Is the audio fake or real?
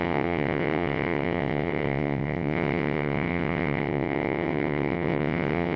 fake